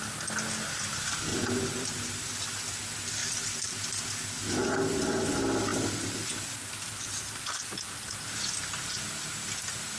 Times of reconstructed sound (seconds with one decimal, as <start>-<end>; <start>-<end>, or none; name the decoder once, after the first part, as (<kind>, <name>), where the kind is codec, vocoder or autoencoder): 1.3-2.8 (vocoder, BigVGAN v2); 3.2-4.4